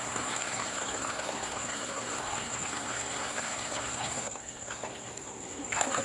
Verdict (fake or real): fake